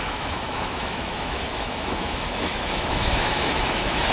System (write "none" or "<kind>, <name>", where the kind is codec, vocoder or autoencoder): autoencoder, DAC-VAE